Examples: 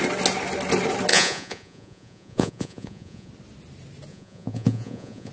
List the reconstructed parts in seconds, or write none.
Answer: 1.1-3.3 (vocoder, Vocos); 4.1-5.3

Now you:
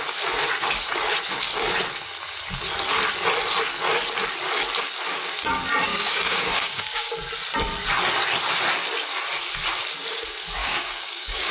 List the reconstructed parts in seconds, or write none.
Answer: 5.9-7.1 (codec, DAC); 10.6-11.5

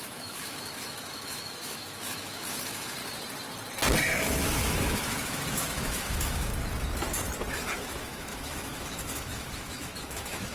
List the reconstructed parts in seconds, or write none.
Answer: 0.0-3.0 (autoencoder, DAC-VAE); 4.0-6.5; 7.5-10.5

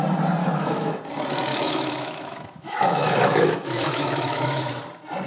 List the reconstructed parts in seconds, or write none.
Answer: 0.4-1.0 (autoencoder, DAC-VAE); 1.5-4.7

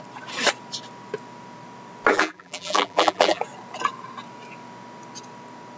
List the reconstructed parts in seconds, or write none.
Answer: 2.1-3.4 (vocoder, BigVGAN v2)

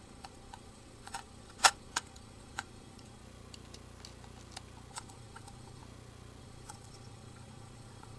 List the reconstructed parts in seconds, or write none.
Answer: 0.0-3.2 (vocoder, Vocos); 4.9-5.8; 6.4-8.2